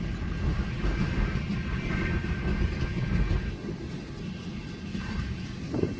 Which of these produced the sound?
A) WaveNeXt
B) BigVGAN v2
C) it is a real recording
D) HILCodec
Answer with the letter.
C